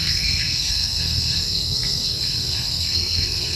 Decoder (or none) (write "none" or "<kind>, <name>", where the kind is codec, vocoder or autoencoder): codec, SNAC